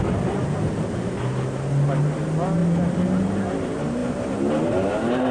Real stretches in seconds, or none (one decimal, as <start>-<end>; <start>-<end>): 0.0-5.3